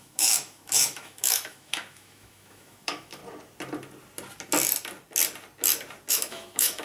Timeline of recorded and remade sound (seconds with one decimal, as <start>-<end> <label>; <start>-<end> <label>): 0.0-3.2 remade; 3.2-6.1 recorded; 6.1-6.8 remade